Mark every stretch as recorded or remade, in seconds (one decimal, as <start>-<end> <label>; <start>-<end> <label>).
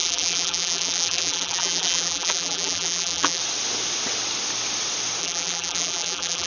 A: 0.0-3.4 remade; 3.4-5.2 recorded; 5.2-6.5 remade